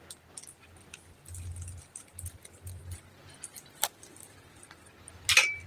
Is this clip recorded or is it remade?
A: recorded